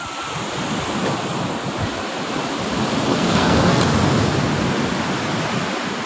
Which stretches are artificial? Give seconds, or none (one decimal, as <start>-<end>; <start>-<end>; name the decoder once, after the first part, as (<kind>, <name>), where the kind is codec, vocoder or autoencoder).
3.1-3.8 (codec, SNAC)